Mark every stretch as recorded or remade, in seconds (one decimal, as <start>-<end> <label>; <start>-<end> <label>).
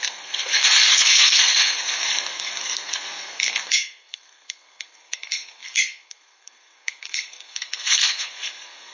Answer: 0.0-8.9 remade